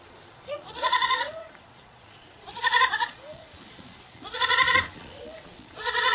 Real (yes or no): no